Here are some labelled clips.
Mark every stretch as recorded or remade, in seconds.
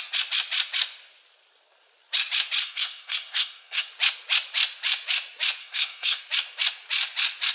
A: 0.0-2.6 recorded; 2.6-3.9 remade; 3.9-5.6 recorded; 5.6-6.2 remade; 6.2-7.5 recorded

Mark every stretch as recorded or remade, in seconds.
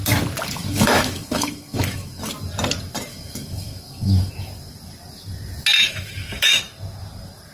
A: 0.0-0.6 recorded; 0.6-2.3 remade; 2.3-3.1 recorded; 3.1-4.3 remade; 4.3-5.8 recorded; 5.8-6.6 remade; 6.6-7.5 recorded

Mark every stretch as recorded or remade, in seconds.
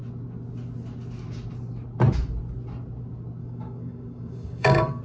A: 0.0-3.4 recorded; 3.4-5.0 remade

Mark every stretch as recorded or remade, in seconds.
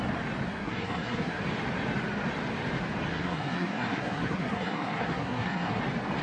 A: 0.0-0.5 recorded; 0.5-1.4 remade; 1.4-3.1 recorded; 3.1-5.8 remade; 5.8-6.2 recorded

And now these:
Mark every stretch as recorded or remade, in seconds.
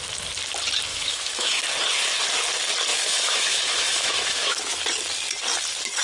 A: 0.0-0.9 recorded; 0.9-1.6 remade; 1.6-2.9 recorded; 2.9-4.8 remade; 4.8-6.0 recorded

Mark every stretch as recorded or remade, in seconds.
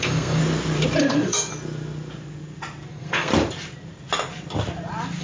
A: 0.0-0.4 remade; 0.4-1.0 recorded; 1.0-1.5 remade; 1.5-2.9 recorded; 2.9-3.3 remade; 3.3-5.2 recorded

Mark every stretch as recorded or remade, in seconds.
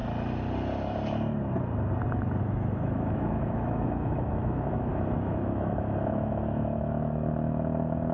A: 0.0-2.4 recorded; 2.4-8.1 remade